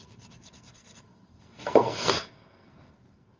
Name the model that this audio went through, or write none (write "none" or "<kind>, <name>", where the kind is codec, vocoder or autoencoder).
codec, SNAC